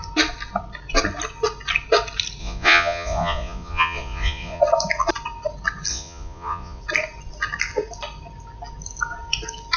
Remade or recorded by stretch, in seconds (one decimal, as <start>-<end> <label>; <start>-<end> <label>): 0.0-2.4 recorded; 2.4-4.6 remade; 4.6-5.9 recorded; 5.9-6.8 remade; 6.8-9.8 recorded